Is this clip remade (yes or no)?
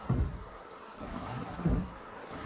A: yes